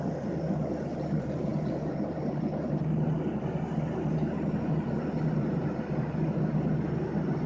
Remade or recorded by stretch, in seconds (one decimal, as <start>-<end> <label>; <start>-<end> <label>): 0.0-7.5 recorded